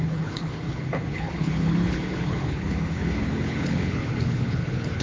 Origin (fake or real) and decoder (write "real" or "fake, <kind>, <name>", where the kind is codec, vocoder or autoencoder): fake, codec, HILCodec